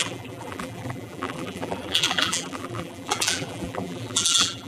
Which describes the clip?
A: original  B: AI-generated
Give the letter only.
B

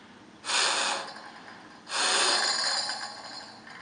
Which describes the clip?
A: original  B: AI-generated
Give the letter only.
A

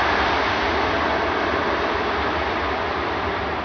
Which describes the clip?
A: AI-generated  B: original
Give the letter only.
B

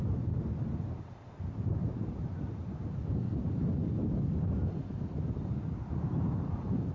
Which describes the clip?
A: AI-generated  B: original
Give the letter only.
B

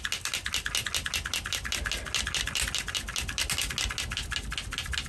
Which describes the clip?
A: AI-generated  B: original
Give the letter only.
B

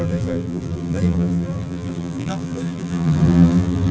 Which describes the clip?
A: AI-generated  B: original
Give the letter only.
A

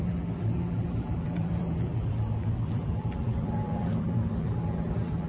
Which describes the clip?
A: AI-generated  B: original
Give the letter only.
A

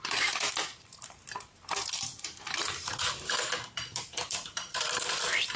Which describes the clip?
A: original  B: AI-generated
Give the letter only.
B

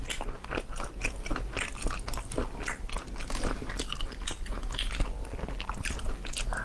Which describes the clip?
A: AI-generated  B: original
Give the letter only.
B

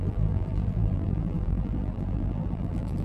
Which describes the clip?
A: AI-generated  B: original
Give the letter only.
A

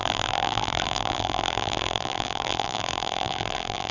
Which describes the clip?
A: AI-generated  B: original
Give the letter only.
A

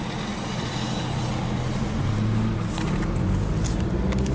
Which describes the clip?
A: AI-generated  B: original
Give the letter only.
B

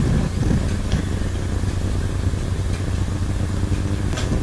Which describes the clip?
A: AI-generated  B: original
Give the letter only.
B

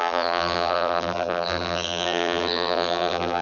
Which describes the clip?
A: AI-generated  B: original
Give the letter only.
A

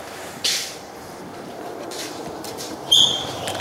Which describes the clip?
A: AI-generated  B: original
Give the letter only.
A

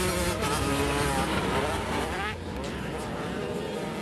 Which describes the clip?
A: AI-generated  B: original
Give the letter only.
B